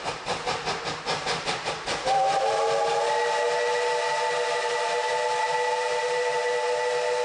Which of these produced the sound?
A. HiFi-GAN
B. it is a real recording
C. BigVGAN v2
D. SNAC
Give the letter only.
B